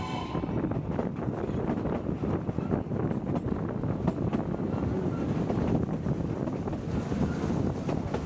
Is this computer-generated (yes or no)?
no